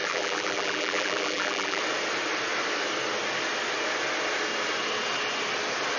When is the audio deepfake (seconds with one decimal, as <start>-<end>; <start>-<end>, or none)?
0.0-1.8